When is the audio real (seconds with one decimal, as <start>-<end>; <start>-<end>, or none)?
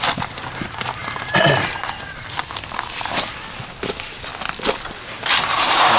0.0-1.0; 3.8-4.3